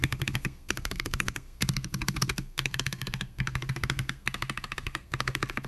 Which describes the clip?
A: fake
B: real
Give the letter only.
A